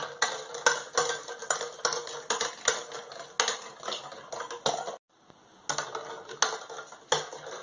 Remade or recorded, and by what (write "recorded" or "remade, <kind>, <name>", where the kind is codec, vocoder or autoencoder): recorded